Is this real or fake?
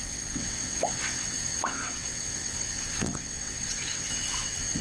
fake